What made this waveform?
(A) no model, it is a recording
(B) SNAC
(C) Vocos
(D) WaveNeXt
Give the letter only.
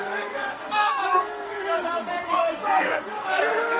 B